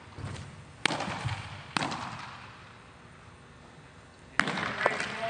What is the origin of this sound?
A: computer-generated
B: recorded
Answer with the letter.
B